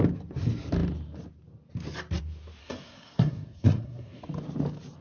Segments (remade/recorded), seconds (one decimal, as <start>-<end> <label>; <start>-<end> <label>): 0.0-2.6 recorded; 2.6-4.2 remade; 4.2-5.0 recorded